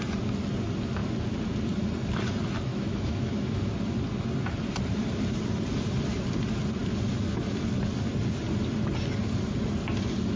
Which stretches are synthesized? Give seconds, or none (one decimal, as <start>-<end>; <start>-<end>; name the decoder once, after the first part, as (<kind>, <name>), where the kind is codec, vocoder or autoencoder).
2.7-3.7 (autoencoder, DAC-VAE)